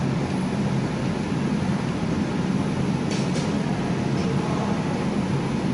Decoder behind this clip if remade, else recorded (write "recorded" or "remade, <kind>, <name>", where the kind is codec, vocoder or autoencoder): recorded